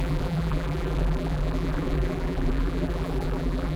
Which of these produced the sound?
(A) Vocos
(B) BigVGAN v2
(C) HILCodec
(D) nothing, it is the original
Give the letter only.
B